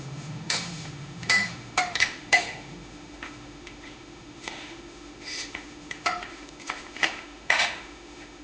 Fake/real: fake